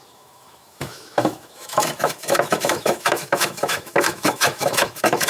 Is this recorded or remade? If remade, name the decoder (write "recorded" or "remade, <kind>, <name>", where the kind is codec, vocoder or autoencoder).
remade, autoencoder, DAC-VAE